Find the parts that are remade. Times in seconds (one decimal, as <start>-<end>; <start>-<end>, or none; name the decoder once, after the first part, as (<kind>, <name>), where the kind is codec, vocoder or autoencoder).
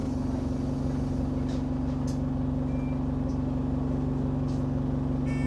none